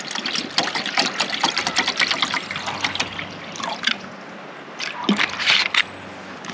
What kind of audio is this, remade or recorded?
recorded